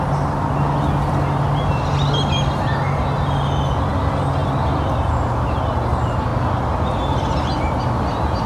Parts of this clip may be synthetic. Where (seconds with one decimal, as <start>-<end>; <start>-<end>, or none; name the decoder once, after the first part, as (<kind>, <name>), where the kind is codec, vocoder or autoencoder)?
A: none